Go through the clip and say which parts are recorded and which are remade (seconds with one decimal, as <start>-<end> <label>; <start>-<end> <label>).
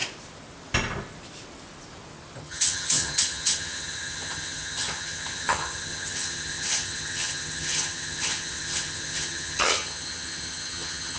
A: 0.0-2.4 recorded; 2.4-11.2 remade